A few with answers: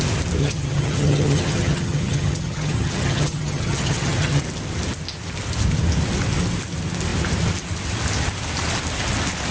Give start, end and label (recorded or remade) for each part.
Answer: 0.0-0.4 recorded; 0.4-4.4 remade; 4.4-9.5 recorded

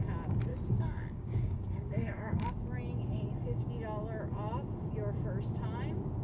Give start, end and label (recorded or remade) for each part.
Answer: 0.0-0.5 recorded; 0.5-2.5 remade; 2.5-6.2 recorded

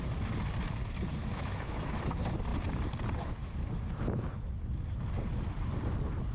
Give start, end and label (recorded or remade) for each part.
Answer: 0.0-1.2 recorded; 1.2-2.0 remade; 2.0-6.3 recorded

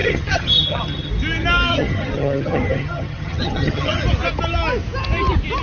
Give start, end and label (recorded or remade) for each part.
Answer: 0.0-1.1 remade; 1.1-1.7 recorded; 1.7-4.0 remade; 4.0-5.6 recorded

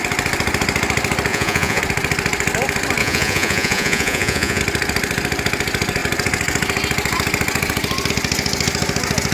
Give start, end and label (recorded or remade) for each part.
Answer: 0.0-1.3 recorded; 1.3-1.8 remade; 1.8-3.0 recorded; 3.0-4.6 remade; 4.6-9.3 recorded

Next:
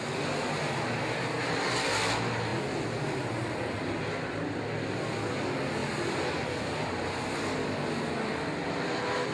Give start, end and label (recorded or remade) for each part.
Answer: 0.0-9.3 recorded

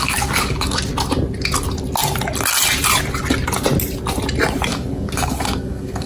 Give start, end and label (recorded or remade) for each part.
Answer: 0.0-0.8 remade; 0.8-4.7 recorded; 4.7-6.1 remade

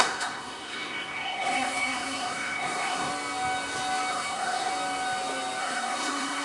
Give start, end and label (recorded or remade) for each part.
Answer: 0.0-3.1 remade; 3.1-4.1 recorded; 4.1-4.7 remade; 4.7-5.6 recorded; 5.6-6.4 remade